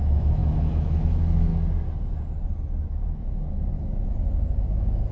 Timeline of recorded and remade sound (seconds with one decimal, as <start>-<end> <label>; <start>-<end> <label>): 0.0-1.5 remade; 1.5-4.6 recorded; 4.6-5.1 remade